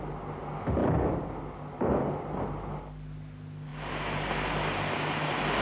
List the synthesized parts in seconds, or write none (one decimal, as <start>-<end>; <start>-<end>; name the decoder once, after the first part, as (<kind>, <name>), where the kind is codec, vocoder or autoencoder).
none